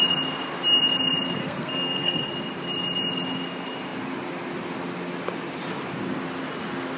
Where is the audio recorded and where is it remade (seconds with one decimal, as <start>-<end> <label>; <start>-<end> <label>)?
0.0-1.4 recorded; 1.4-2.3 remade; 2.3-7.0 recorded